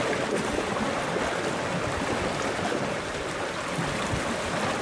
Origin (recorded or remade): recorded